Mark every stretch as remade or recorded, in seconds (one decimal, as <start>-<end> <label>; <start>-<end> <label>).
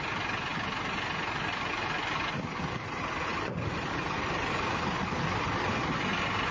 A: 0.0-6.5 recorded